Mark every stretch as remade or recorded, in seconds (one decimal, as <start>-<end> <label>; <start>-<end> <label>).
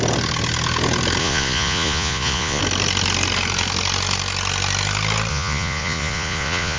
0.0-1.2 recorded; 1.2-2.6 remade; 2.6-5.3 recorded; 5.3-6.8 remade